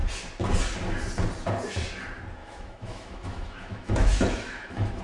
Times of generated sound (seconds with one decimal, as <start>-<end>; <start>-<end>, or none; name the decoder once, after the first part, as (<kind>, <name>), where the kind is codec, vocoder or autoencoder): 2.4-5.0 (autoencoder, DAC-VAE)